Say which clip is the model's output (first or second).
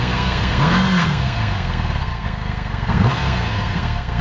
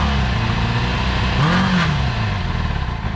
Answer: first